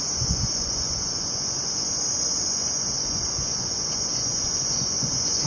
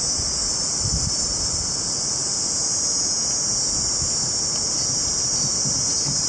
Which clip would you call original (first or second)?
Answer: second